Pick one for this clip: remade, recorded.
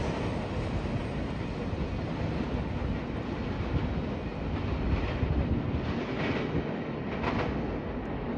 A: recorded